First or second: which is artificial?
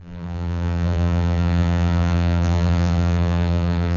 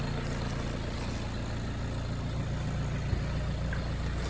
first